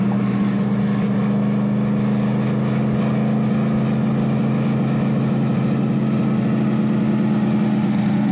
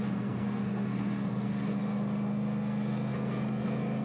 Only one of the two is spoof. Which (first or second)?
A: second